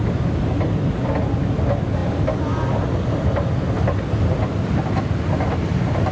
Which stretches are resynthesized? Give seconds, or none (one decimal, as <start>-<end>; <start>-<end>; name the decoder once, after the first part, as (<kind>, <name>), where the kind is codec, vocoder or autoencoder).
none